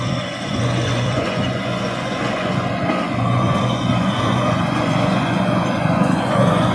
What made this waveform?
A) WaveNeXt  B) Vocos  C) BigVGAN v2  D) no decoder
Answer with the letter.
B